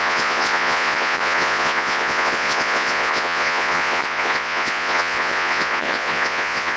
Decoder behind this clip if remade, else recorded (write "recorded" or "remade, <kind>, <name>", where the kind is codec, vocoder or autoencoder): remade, vocoder, Vocos